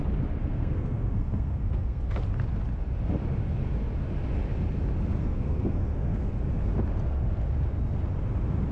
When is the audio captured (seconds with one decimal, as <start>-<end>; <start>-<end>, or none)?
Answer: 0.0-0.4; 2.0-5.2; 6.3-8.7